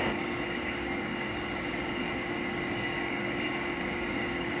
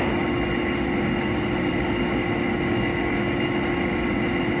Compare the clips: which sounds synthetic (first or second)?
first